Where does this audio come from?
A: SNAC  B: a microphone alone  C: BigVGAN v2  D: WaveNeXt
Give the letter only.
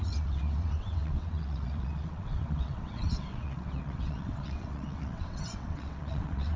D